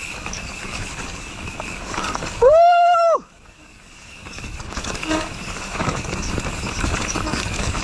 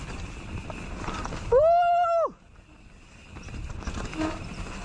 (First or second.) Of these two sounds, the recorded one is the second